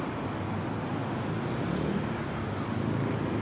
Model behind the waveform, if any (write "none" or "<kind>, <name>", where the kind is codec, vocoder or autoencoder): none